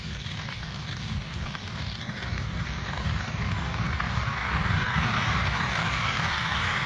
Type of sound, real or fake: fake